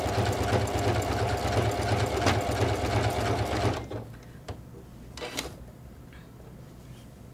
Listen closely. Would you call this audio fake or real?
real